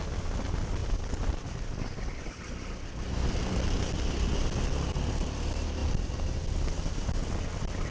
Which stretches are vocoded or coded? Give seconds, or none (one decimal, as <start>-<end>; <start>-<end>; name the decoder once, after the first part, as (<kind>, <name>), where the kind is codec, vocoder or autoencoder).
3.1-3.6 (codec, SNAC)